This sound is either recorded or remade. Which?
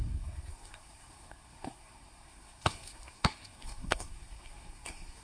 remade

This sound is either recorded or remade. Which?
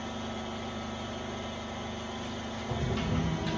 recorded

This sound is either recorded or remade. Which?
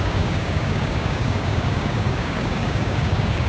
remade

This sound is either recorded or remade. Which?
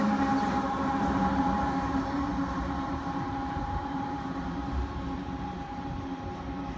remade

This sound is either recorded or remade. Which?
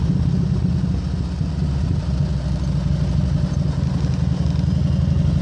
recorded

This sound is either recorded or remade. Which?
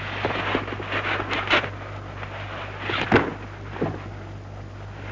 recorded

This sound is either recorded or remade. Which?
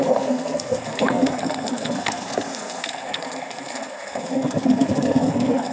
remade